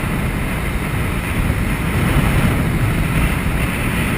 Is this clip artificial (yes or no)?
no